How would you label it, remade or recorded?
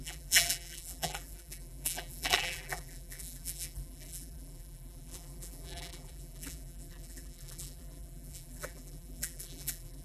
remade